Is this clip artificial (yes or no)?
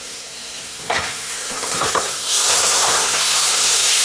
yes